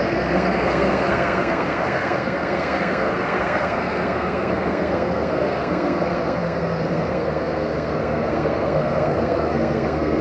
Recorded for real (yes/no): no